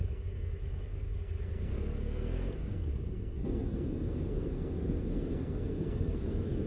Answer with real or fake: fake